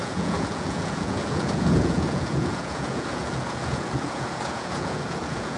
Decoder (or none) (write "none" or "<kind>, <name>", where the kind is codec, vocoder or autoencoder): vocoder, Vocos